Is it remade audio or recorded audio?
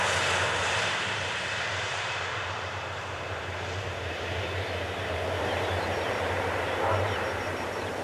remade